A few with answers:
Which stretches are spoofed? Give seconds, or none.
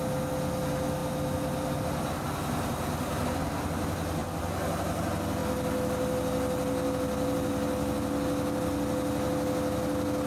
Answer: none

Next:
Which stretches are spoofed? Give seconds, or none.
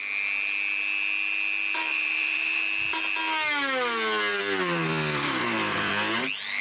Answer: 1.8-2.6 (vocoder, BigVGAN v2); 4.3-5.9